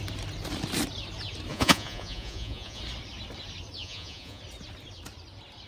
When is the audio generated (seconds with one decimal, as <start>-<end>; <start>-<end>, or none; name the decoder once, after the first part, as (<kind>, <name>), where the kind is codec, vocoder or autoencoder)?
1.5-2.8 (vocoder, Vocos); 3.8-4.4